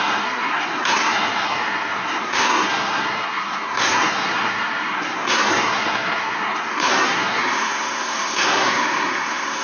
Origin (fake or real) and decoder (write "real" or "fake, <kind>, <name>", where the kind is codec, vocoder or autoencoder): fake, codec, SNAC